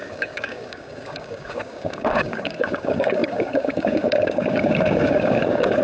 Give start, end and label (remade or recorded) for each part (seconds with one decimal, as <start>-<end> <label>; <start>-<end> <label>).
0.0-5.8 remade